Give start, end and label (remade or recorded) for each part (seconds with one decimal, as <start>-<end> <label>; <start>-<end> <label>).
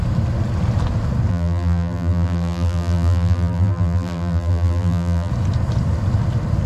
0.0-1.3 recorded; 1.3-5.3 remade; 5.3-6.7 recorded